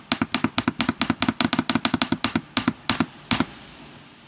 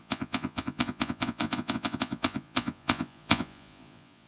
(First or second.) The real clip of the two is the first